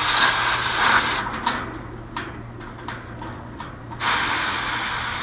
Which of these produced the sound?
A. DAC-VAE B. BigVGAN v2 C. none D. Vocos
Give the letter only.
C